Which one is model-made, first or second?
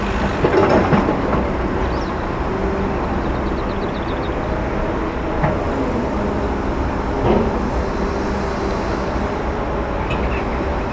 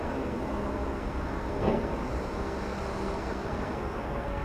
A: second